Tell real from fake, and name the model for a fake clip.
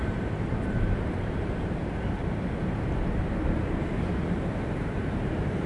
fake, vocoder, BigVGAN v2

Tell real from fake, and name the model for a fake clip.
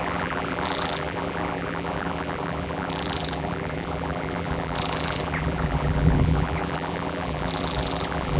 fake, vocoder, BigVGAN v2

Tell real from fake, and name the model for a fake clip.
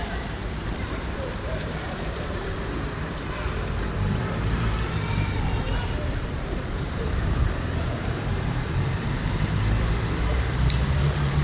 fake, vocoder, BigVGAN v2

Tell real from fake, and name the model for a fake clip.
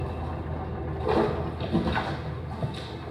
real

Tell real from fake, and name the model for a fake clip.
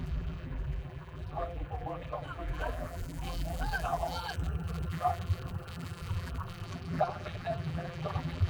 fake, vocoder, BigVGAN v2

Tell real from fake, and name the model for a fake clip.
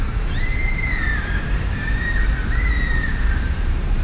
fake, vocoder, BigVGAN v2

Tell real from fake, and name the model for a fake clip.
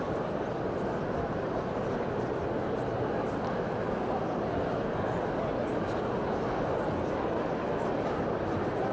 real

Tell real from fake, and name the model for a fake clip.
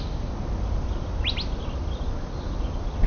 real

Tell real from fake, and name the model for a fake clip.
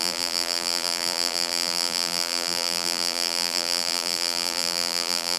fake, vocoder, BigVGAN v2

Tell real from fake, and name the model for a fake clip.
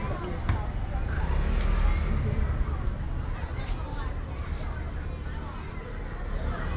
real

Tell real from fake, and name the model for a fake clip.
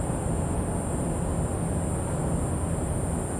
real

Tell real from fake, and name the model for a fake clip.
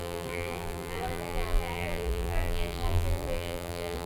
fake, vocoder, BigVGAN v2